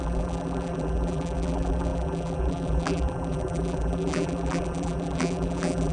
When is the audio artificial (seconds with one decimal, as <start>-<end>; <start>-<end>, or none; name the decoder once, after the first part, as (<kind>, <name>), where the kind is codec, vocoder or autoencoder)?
0.0-5.9 (vocoder, BigVGAN v2)